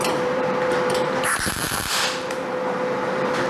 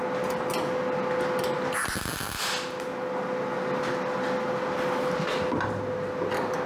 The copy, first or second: first